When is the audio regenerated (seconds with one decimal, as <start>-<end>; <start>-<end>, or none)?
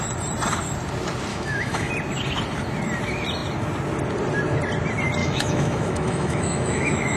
1.3-1.9; 5.2-7.2